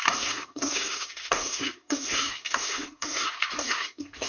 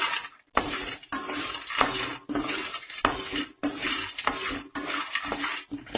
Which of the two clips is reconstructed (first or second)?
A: first